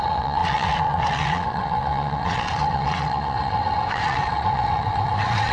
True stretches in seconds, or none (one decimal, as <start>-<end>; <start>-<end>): none